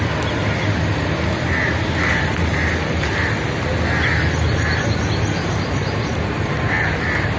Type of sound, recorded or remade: recorded